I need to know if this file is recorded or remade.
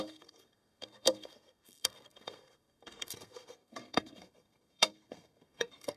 remade